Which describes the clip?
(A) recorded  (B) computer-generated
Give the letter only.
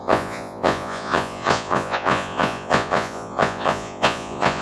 B